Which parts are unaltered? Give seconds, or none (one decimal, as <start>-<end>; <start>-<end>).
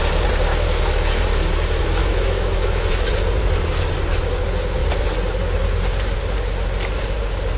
0.0-0.5; 1.1-2.0; 3.1-7.6